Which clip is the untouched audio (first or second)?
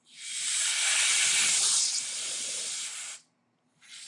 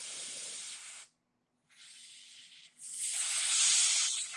second